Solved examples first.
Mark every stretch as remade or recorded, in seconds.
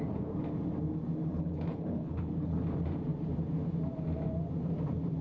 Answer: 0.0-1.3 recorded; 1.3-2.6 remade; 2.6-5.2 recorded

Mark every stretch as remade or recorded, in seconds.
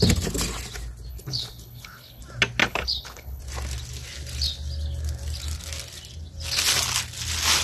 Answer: 0.0-1.1 recorded; 1.1-2.2 remade; 2.2-2.6 recorded; 2.6-3.4 remade; 3.4-7.6 recorded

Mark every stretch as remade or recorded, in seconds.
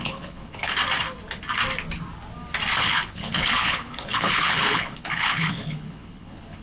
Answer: 0.0-0.8 remade; 0.8-2.8 recorded; 2.8-6.6 remade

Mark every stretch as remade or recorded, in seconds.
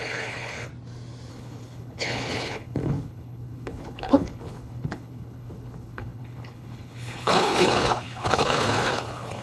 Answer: 0.0-0.7 remade; 0.7-1.3 recorded; 1.3-9.4 remade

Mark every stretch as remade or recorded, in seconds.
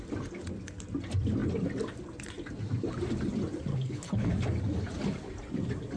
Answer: 0.0-3.7 recorded; 3.7-4.3 remade; 4.3-6.0 recorded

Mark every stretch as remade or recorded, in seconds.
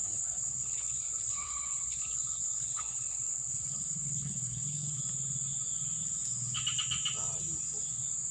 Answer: 0.0-5.0 remade; 5.0-8.3 recorded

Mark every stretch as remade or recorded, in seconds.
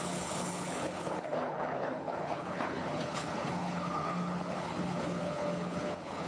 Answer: 0.0-6.3 remade